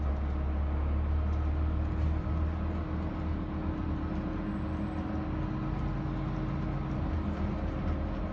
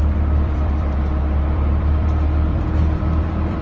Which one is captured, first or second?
first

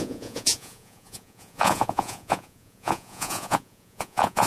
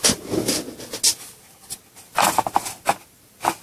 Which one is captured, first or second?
second